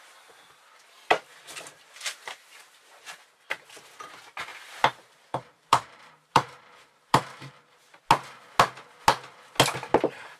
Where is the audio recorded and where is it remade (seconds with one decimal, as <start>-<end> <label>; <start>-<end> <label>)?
0.0-1.3 recorded; 1.3-2.3 remade; 2.3-4.5 recorded; 4.5-8.0 remade; 8.0-10.4 recorded